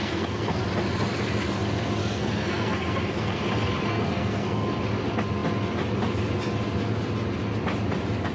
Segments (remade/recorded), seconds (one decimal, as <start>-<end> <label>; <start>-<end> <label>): 0.0-0.6 remade; 0.6-2.0 recorded; 2.0-3.4 remade; 3.4-3.9 recorded; 3.9-4.8 remade; 4.8-8.3 recorded